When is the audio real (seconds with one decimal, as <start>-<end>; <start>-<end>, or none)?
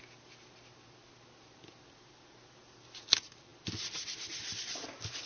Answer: 0.0-5.3